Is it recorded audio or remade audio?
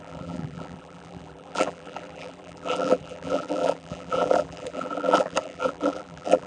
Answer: remade